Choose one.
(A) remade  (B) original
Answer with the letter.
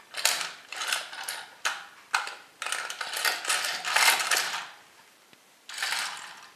B